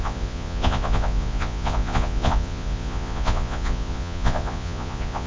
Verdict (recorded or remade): remade